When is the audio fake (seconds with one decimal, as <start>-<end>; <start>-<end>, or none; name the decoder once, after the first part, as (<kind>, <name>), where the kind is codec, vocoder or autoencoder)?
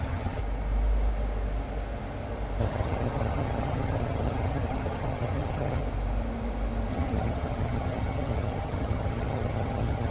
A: 0.0-0.4 (vocoder, HiFi-GAN); 2.6-5.8; 6.9-10.1